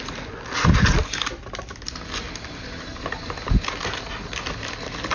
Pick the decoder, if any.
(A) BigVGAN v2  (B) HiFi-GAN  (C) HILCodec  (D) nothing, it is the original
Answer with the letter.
D